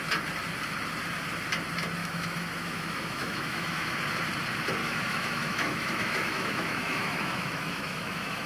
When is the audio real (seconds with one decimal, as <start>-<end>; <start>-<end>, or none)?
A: 0.0-2.0; 3.9-4.8